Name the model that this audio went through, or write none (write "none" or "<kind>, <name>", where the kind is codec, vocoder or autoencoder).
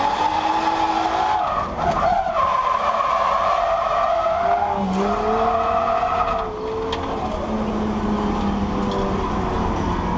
none